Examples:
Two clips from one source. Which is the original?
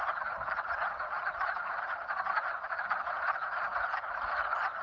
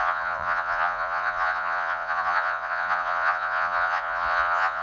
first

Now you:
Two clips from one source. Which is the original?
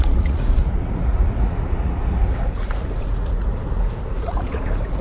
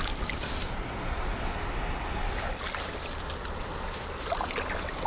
second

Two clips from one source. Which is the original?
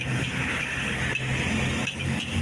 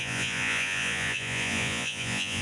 first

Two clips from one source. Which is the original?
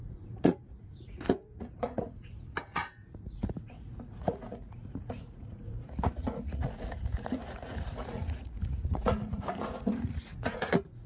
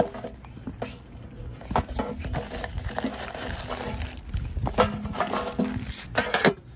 second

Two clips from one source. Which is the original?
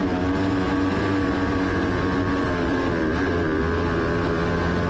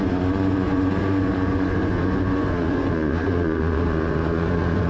first